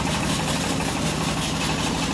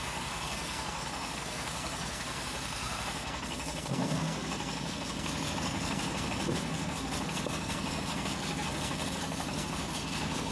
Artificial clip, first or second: second